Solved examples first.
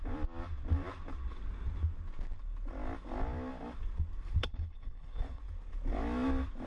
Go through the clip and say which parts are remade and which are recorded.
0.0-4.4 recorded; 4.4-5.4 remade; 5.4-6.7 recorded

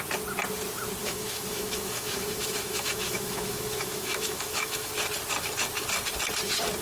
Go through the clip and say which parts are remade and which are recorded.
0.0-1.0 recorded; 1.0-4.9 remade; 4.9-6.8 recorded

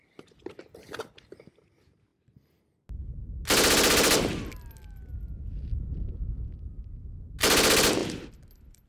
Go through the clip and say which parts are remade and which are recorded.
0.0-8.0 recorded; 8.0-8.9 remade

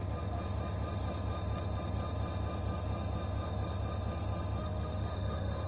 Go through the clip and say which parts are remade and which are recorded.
0.0-4.6 recorded; 4.6-5.7 remade